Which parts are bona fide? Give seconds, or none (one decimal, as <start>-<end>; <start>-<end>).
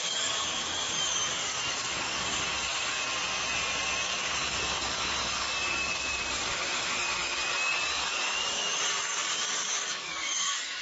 3.1-4.0